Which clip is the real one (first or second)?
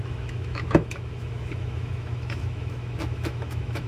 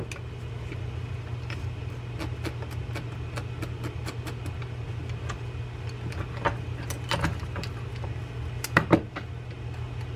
second